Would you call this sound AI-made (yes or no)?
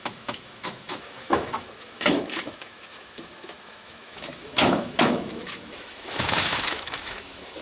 yes